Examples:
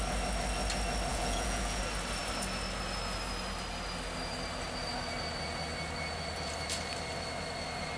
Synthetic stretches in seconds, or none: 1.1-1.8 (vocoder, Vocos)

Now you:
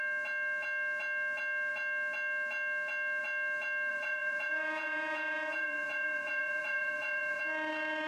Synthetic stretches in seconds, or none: 3.9-7.4 (vocoder, Vocos)